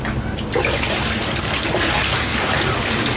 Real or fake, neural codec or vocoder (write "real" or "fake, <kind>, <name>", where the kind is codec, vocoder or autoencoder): real